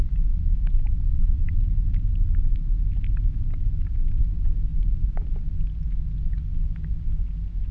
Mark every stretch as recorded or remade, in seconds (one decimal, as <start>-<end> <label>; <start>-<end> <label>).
0.0-7.7 recorded